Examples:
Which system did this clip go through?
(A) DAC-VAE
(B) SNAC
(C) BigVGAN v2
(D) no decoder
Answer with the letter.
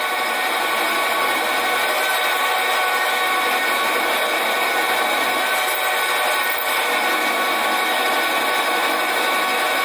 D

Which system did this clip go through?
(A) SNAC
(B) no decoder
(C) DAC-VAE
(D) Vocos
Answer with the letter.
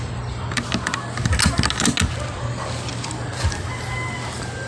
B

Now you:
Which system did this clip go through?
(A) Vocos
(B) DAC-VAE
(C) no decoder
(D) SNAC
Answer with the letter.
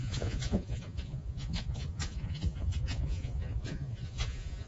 A